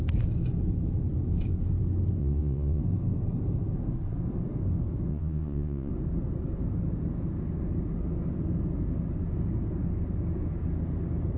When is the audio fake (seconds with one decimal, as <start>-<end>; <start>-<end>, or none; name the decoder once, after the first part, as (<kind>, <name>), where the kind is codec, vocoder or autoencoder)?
2.2-2.8 (vocoder, Vocos); 5.1-5.9